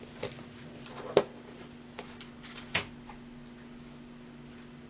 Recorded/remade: recorded